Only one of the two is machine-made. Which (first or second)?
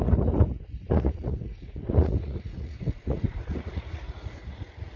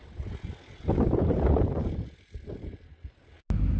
first